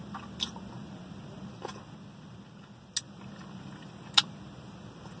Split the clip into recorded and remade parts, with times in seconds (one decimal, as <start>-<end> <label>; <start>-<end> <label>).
0.0-5.2 recorded